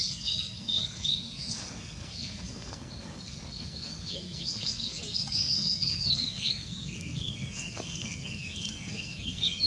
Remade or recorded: remade